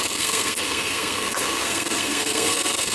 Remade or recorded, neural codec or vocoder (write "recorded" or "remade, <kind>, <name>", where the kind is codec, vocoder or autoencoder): remade, codec, SNAC